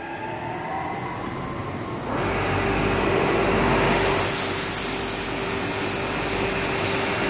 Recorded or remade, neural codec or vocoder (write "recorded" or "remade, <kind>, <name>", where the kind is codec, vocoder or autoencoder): recorded